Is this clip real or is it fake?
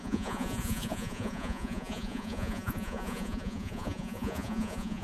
fake